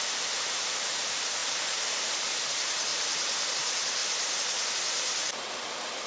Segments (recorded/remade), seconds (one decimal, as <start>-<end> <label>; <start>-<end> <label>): 0.0-4.0 remade; 4.0-4.7 recorded; 4.7-6.1 remade